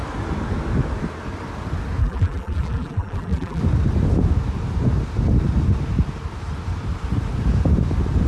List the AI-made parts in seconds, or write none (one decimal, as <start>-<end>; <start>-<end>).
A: 2.0-3.6